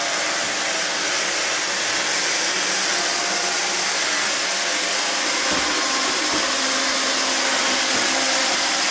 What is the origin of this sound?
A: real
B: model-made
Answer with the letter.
A